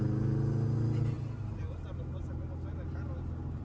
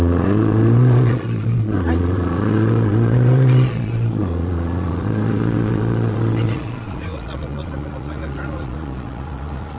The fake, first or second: second